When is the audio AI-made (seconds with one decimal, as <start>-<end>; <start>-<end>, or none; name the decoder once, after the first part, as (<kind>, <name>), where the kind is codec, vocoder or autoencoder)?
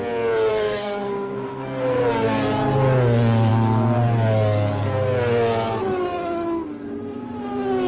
0.5-2.0 (codec, SNAC)